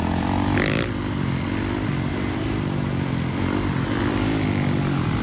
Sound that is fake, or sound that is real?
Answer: fake